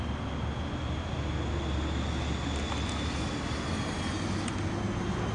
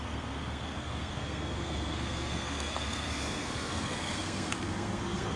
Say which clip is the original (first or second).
first